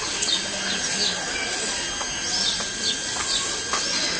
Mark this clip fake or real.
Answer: real